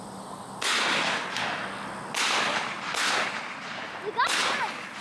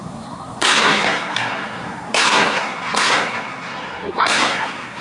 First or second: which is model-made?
second